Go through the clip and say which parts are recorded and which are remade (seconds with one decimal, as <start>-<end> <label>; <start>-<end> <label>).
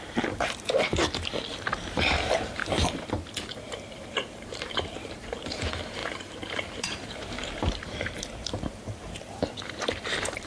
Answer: 0.0-1.0 remade; 1.0-1.8 recorded; 1.8-2.6 remade; 2.6-4.1 recorded; 4.1-10.5 remade